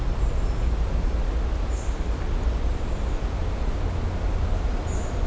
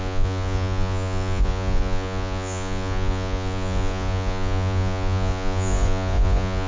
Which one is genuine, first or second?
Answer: first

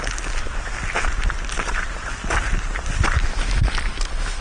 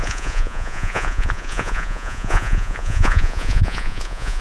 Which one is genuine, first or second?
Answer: first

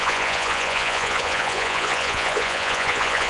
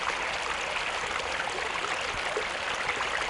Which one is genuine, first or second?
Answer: second